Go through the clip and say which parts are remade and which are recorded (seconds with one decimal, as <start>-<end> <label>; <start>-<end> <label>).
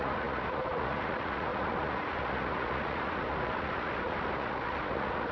0.0-5.3 remade